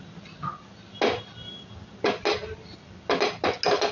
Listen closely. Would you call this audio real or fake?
real